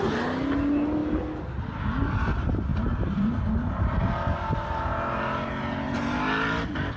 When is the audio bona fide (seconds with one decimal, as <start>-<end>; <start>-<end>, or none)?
0.0-2.7